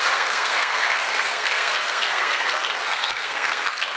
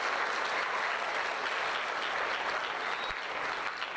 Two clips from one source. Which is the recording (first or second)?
second